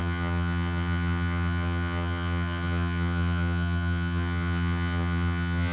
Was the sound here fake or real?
fake